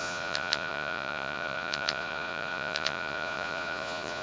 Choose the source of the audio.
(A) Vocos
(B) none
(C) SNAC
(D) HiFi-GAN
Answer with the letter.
A